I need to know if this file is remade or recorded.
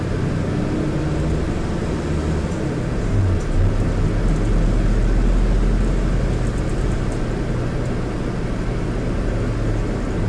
recorded